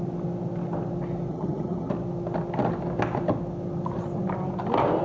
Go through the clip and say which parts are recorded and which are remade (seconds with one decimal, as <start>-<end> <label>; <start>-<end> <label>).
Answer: 0.0-1.3 recorded; 1.3-1.9 remade; 1.9-5.0 recorded